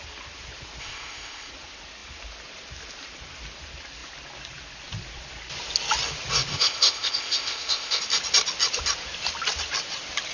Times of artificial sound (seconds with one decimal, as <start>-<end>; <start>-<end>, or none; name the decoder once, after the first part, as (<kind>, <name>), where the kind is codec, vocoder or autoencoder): 0.8-1.5 (codec, ZipCodec); 6.5-8.0

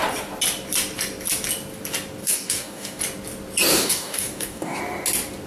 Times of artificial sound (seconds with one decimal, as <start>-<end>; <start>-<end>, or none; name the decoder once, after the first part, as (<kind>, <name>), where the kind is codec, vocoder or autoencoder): 2.2-3.0 (codec, DAC); 3.7-4.8

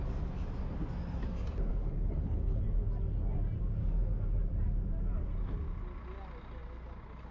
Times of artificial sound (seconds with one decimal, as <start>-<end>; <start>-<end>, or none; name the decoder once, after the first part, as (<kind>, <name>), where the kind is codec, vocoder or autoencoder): 1.7-2.6 (codec, HILCodec)

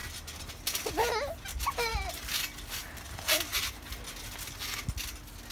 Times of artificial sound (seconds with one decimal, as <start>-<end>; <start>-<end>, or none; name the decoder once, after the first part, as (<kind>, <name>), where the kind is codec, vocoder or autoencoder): 1.9-2.4 (vocoder, BigVGAN v2); 2.8-3.7

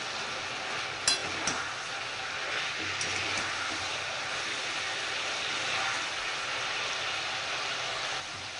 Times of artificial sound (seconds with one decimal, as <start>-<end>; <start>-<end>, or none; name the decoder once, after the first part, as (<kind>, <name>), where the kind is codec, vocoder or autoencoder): 1.2-1.7 (vocoder, BigVGAN v2); 3.2-5.5

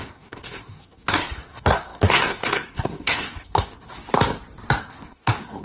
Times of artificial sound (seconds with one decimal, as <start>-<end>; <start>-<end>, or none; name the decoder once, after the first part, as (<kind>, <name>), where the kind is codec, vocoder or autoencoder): 0.0-3.9 (codec, SNAC); 4.8-5.6

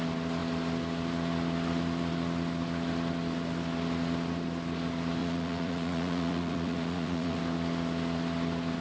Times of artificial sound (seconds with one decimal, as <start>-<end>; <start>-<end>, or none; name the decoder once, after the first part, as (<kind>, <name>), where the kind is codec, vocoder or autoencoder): 5.2-7.4 (vocoder, Vocos)